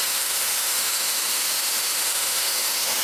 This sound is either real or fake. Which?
fake